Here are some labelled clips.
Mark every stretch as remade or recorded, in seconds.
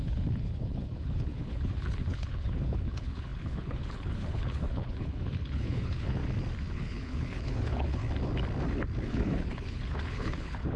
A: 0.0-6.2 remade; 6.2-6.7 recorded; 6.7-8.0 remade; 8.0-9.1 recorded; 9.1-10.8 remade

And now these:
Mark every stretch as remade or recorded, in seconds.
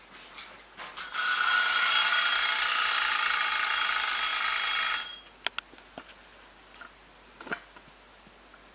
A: 0.0-8.7 recorded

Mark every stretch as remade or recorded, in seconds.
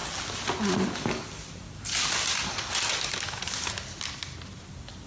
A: 0.0-5.1 recorded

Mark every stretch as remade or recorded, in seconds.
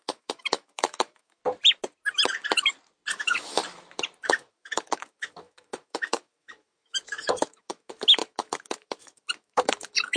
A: 0.0-1.4 remade; 1.4-3.1 recorded; 3.1-3.6 remade; 3.6-4.2 recorded; 4.2-10.2 remade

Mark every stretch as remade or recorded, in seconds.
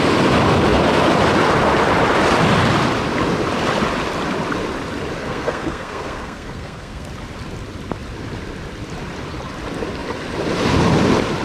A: 0.0-5.2 recorded; 5.2-7.1 remade; 7.1-11.4 recorded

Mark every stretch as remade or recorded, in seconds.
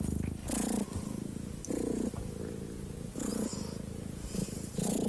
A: 0.0-3.3 recorded; 3.3-5.1 remade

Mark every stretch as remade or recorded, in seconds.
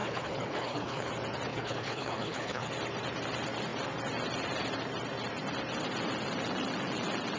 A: 0.0-1.1 remade; 1.1-1.5 recorded; 1.5-2.7 remade; 2.7-7.4 recorded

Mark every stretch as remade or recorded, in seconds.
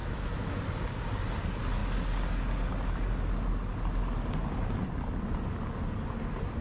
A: 0.0-0.6 remade; 0.6-6.6 recorded